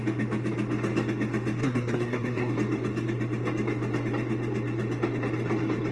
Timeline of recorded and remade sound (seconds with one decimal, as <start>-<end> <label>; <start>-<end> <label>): 0.0-1.6 recorded; 1.6-2.5 remade; 2.5-5.9 recorded